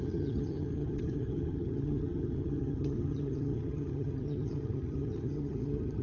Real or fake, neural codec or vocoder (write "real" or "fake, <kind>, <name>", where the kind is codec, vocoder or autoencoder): fake, vocoder, HiFi-GAN